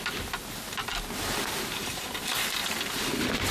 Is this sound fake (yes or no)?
no